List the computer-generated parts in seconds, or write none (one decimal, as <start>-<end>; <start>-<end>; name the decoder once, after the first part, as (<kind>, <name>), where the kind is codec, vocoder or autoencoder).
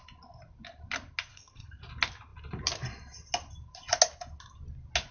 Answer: 1.3-1.8 (codec, SNAC)